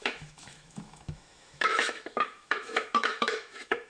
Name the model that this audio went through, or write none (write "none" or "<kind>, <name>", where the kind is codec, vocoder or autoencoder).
autoencoder, DAC-VAE